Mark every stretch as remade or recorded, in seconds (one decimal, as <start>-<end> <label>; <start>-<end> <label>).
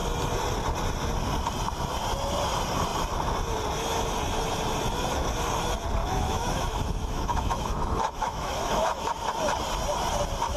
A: 0.0-6.0 recorded; 6.0-9.1 remade; 9.1-10.6 recorded